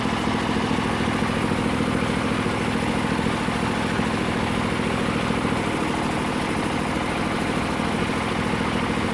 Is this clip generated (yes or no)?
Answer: no